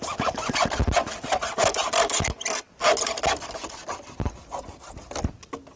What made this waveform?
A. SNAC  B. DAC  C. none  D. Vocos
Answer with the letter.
C